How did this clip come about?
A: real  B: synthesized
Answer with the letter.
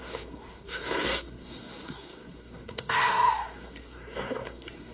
B